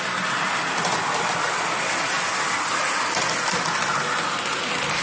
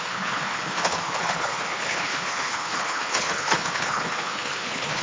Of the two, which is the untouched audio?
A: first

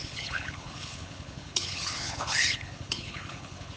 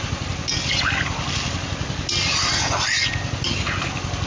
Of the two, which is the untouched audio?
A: second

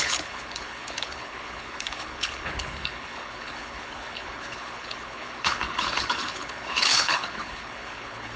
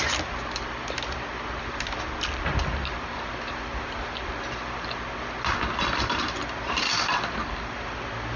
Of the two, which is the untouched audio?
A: second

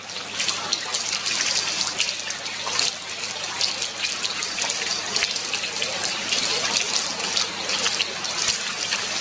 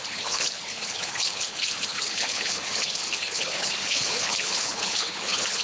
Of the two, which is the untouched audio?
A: first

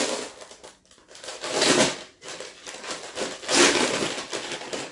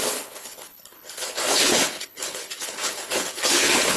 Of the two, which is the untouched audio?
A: first